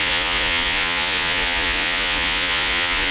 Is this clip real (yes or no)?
no